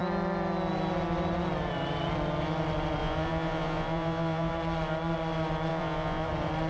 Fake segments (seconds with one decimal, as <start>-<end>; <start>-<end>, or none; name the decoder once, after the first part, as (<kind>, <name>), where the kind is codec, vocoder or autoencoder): 3.0-4.5 (vocoder, Vocos); 5.7-6.3